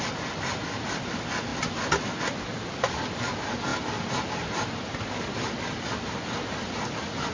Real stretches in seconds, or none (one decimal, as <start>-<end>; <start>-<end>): 0.0-7.3